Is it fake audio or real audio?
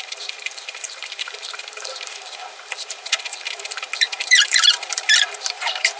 fake